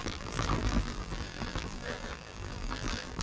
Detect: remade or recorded remade